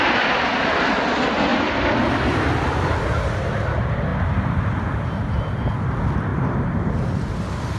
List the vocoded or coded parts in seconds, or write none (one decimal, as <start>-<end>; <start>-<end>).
none